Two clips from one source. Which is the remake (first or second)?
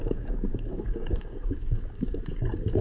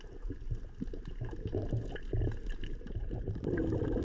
first